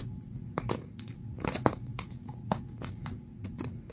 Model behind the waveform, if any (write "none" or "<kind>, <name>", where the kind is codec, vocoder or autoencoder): vocoder, Vocos